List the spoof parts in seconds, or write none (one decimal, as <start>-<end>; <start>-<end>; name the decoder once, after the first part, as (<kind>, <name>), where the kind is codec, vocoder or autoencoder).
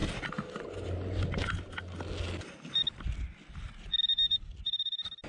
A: none